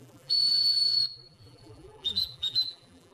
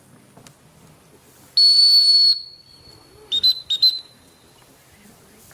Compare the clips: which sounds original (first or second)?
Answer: second